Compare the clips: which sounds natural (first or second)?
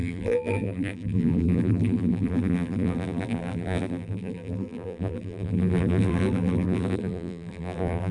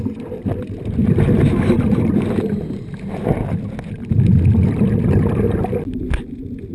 second